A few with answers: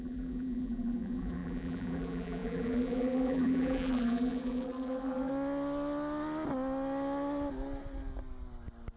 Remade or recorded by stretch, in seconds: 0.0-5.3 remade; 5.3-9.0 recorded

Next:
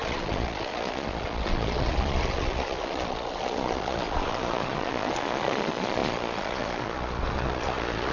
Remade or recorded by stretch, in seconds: 0.0-8.1 remade